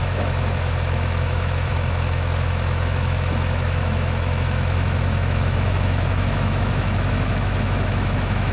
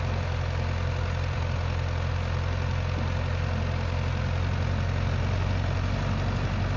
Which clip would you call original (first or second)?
second